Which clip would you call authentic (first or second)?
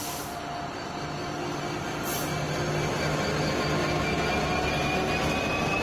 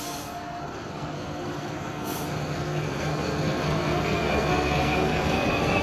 first